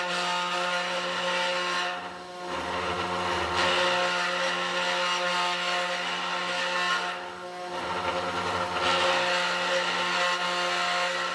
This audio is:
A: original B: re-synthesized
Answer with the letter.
A